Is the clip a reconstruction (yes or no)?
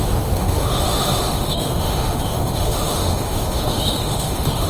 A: yes